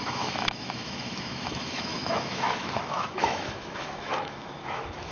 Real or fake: fake